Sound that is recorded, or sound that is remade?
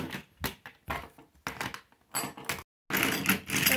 recorded